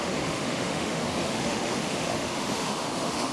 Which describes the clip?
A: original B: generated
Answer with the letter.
B